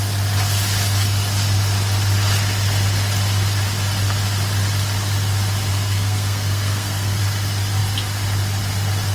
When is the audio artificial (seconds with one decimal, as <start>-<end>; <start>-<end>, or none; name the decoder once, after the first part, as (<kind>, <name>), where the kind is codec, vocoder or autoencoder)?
5.7-7.2 (codec, SNAC)